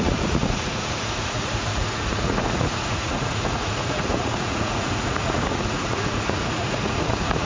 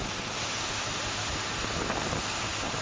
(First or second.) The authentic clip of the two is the second